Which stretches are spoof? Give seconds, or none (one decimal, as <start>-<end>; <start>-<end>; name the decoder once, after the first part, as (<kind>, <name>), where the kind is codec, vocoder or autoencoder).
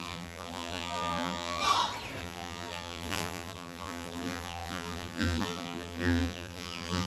0.0-1.6 (vocoder, BigVGAN v2); 2.2-7.1